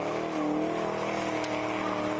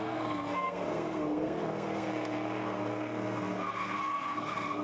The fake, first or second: second